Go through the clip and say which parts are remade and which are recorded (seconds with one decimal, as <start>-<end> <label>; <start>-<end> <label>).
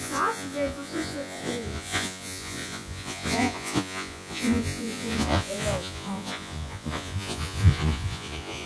0.0-8.7 remade